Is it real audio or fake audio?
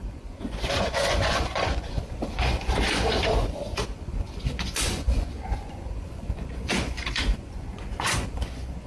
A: fake